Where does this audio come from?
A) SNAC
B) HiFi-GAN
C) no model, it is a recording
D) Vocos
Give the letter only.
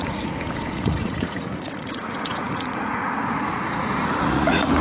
D